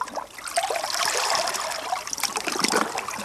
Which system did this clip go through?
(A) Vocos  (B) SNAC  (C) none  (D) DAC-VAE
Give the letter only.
C